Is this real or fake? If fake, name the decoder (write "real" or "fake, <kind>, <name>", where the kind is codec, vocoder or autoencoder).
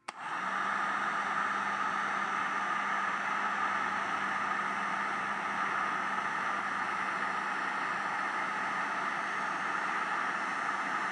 real